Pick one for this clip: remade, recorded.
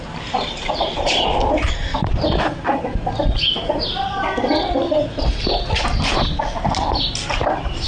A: recorded